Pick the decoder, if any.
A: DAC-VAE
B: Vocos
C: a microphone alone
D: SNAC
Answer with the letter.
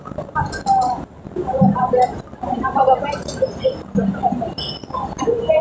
C